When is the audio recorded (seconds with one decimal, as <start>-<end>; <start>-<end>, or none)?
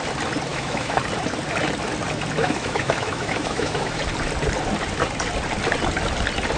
0.0-0.5; 1.0-2.4; 4.0-6.6